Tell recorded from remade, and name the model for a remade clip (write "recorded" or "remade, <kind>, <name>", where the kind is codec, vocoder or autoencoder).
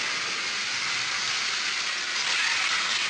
recorded